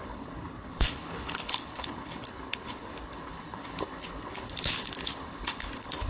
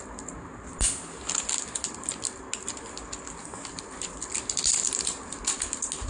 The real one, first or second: second